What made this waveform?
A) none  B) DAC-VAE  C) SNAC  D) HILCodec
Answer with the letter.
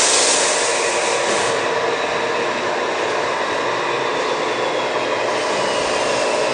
A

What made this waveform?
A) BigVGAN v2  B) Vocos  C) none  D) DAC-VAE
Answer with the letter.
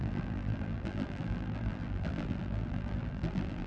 A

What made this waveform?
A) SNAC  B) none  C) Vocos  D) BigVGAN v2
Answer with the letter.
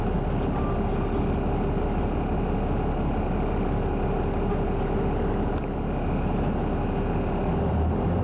B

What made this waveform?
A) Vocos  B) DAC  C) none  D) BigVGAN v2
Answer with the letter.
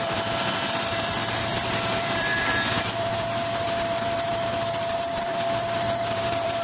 D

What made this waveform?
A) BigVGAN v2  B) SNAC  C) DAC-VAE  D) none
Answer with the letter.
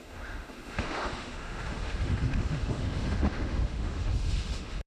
C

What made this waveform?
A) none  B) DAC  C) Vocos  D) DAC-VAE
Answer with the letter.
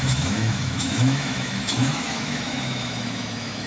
D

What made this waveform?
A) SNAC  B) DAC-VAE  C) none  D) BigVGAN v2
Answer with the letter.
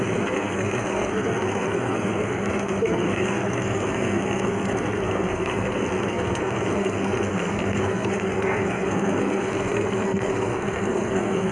A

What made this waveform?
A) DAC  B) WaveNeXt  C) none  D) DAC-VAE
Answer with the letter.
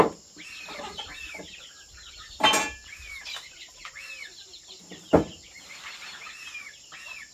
C